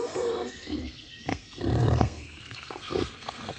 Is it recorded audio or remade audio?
remade